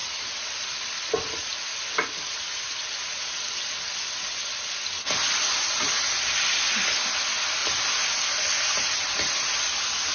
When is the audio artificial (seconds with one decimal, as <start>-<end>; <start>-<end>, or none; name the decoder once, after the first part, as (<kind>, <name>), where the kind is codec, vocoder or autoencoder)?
none